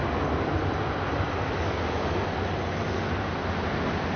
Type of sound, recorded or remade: recorded